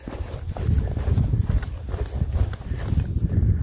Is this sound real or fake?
real